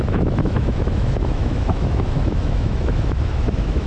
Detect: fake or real fake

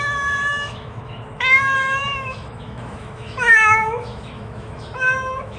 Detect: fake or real fake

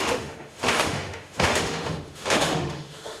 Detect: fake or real fake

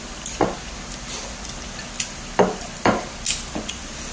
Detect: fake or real real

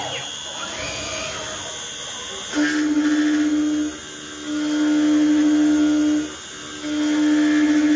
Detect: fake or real real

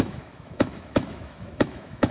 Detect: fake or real fake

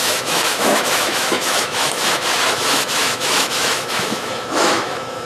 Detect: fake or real fake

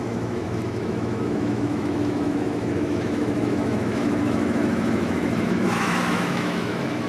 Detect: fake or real fake